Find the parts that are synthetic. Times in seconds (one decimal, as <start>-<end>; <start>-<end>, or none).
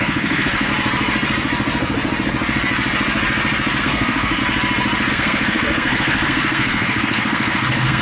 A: 0.0-0.7; 3.8-4.4; 5.1-8.0